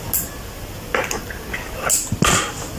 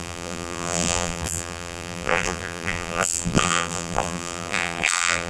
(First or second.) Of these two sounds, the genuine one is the first